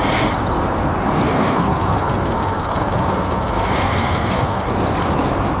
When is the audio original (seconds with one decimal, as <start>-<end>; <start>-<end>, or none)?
0.0-1.3; 4.7-5.6